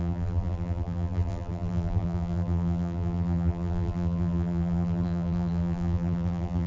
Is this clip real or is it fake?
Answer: fake